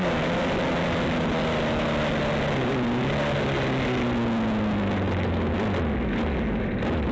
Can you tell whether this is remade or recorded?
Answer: recorded